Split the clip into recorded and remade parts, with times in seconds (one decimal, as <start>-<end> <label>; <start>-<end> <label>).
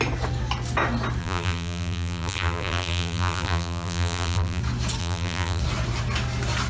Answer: 0.0-1.2 recorded; 1.2-4.6 remade; 4.6-5.0 recorded; 5.0-5.6 remade; 5.6-6.7 recorded